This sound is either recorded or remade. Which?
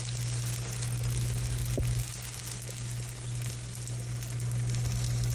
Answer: recorded